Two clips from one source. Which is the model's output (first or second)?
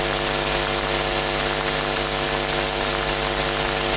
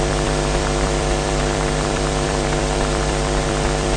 second